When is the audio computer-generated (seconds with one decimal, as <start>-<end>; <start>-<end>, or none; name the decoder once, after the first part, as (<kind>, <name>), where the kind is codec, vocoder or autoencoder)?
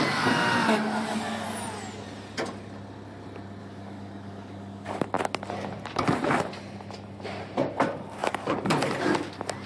3.6-5.0 (codec, DAC); 8.2-8.8